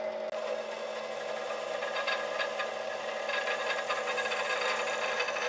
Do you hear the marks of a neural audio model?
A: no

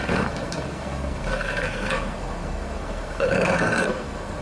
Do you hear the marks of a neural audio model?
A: yes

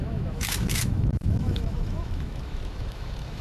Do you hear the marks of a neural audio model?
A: yes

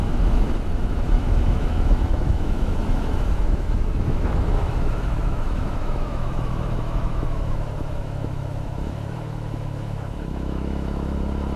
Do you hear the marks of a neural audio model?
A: yes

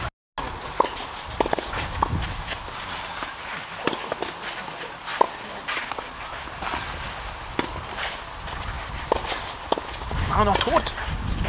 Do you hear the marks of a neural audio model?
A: no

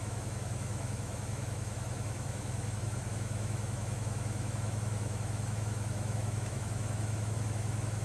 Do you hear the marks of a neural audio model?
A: yes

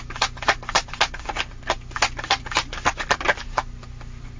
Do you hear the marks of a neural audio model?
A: no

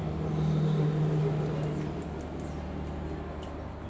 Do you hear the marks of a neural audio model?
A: no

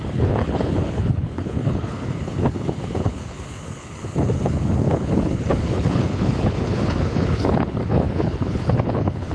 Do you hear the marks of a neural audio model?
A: yes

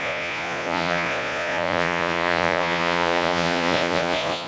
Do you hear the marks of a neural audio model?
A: yes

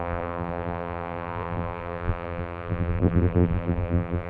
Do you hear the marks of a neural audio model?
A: yes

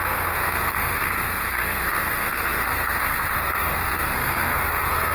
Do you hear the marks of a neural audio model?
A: yes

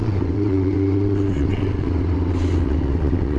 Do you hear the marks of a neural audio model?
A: yes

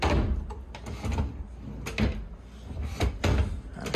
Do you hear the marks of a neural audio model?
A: no